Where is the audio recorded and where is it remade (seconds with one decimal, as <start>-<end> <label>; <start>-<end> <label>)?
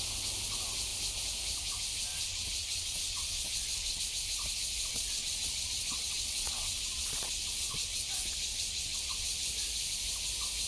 0.0-2.1 recorded; 2.1-4.0 remade; 4.0-4.9 recorded; 4.9-9.5 remade; 9.5-10.7 recorded